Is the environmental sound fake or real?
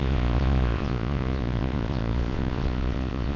fake